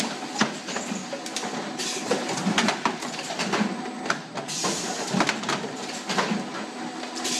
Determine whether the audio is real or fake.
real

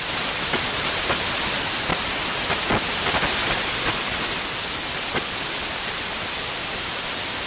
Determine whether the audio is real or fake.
real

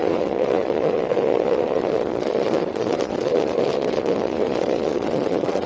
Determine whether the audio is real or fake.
fake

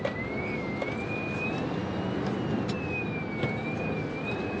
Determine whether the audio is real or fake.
real